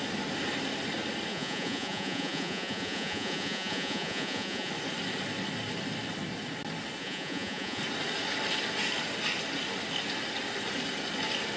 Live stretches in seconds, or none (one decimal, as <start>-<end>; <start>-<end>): 0.0-1.3; 4.7-7.0; 7.8-11.6